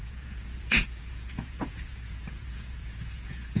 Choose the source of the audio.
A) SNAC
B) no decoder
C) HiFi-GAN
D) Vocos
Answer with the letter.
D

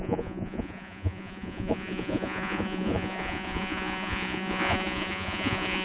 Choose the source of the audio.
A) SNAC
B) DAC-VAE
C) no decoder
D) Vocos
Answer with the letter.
D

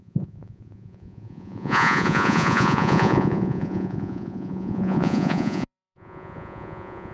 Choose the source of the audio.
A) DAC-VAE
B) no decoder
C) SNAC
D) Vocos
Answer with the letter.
D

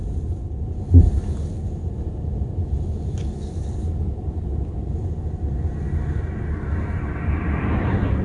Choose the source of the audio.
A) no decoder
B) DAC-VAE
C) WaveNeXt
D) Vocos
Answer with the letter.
A